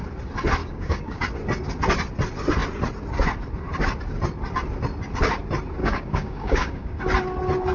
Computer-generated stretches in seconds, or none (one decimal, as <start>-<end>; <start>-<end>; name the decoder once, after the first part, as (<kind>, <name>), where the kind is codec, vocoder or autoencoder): 0.6-1.2 (codec, DAC); 5.8-7.0